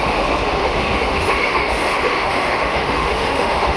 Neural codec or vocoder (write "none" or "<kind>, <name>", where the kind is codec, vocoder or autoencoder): autoencoder, DAC-VAE